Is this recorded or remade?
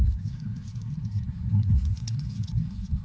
remade